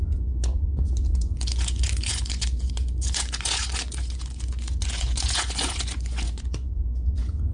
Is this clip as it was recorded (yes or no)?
no